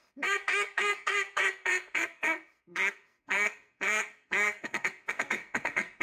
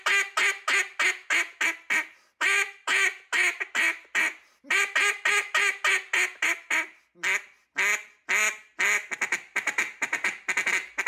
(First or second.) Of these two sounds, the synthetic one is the first